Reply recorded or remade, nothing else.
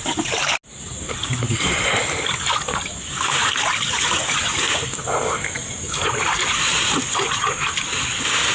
recorded